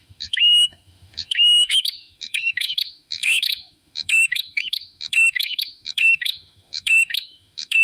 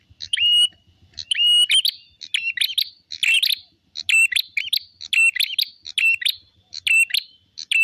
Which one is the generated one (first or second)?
first